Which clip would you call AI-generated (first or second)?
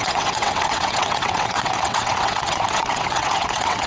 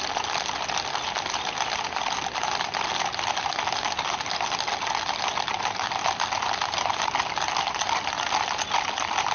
first